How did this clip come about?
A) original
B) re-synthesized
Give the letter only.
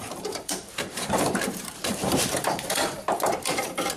B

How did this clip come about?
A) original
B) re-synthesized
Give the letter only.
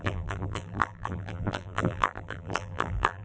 B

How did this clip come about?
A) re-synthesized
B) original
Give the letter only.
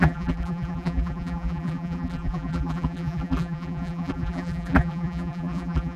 A